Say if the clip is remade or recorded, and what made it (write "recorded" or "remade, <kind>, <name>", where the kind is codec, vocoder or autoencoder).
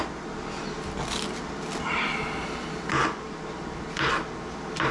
recorded